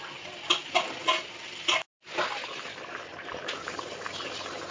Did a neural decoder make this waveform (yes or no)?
no